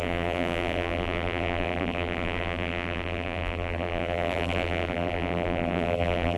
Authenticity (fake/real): fake